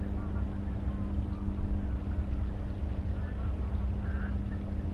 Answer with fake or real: real